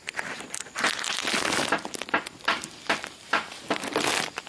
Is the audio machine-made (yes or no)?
no